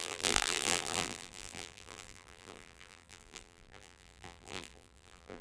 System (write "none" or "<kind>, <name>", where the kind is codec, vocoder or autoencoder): vocoder, BigVGAN v2